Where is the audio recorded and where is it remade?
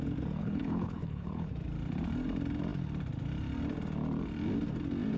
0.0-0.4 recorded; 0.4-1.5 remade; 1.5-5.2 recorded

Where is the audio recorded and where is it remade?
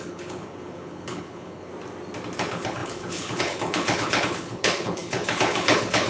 0.0-1.7 remade; 1.7-2.4 recorded; 2.4-6.1 remade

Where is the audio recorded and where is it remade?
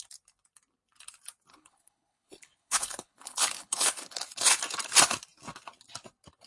0.0-1.5 recorded; 1.5-4.6 remade; 4.6-6.5 recorded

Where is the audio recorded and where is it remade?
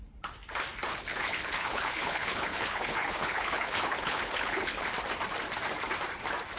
0.0-0.9 recorded; 0.9-4.9 remade; 4.9-6.6 recorded